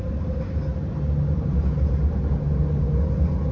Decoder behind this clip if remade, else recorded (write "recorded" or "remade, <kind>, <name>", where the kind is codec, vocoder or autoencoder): recorded